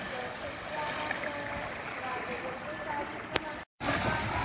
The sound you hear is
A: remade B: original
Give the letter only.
B